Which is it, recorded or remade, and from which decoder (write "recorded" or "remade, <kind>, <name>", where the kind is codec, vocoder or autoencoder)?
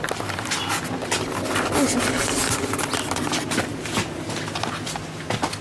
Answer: recorded